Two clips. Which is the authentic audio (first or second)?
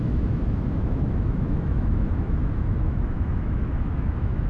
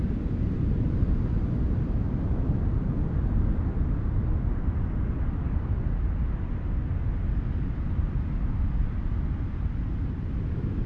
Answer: second